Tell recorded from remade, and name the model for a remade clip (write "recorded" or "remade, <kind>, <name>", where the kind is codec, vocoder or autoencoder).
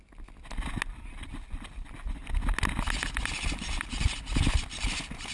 recorded